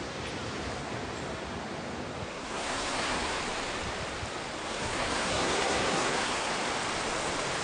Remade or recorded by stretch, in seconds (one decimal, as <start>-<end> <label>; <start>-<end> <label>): 0.0-2.3 recorded; 2.3-3.4 remade; 3.4-4.6 recorded; 4.6-6.5 remade; 6.5-7.6 recorded